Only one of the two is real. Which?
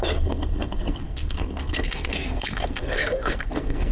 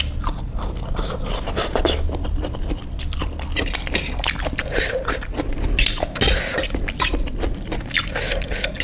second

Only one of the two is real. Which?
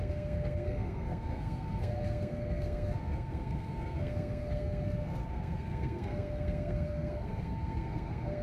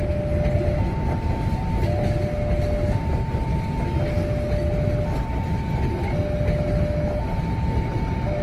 second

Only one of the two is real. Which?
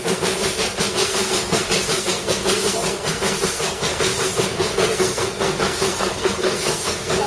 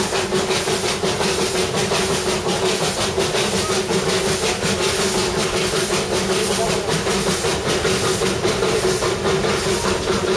second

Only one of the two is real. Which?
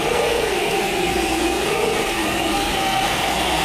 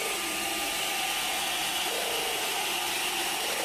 second